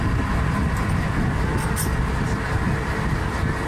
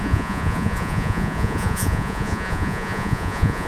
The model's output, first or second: second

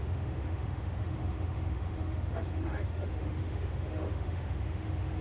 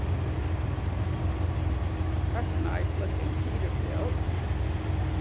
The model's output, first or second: first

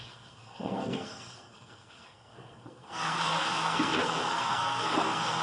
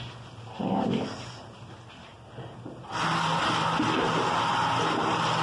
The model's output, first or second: first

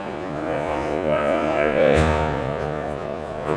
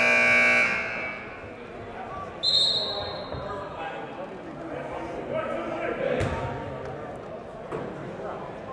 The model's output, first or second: first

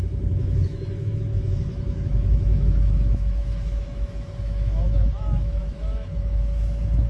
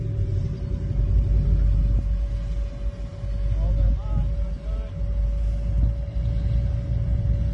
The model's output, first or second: first